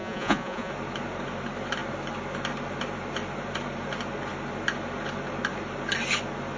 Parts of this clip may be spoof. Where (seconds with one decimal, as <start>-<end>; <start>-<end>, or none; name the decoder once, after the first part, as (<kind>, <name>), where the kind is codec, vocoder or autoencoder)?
0.0-0.7 (vocoder, Vocos)